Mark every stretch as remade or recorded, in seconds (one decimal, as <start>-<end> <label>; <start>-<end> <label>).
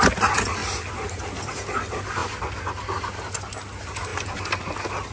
0.0-5.1 recorded